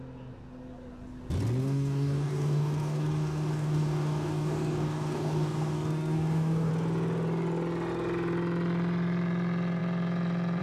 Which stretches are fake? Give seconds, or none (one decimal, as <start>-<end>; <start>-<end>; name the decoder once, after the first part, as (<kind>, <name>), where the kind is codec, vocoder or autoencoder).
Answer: 1.6-6.7 (codec, DAC)